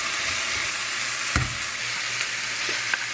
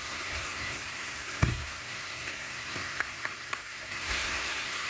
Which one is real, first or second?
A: first